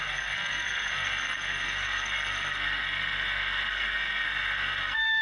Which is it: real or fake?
fake